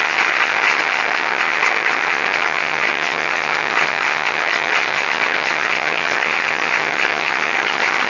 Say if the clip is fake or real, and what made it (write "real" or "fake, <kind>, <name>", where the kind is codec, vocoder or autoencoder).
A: fake, vocoder, HiFi-GAN